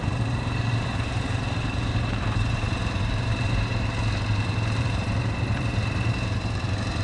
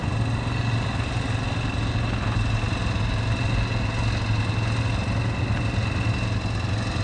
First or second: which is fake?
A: first